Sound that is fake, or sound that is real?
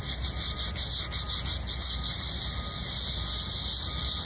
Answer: real